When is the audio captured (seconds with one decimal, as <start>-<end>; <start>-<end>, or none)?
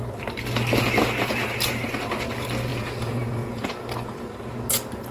0.0-2.7; 3.7-5.1